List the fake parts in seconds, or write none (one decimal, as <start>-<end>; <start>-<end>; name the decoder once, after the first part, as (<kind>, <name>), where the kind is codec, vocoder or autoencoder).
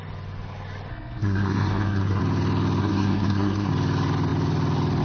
0.9-2.2 (codec, SNAC); 2.8-3.7